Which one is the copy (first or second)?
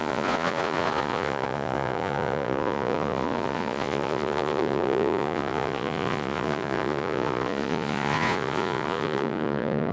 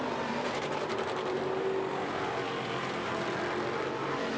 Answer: first